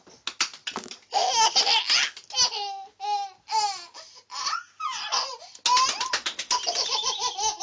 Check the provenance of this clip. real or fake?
real